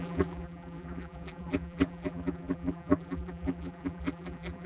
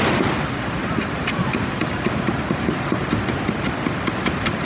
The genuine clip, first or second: second